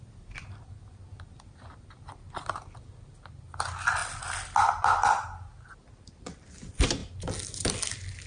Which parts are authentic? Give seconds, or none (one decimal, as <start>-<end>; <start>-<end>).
0.0-8.3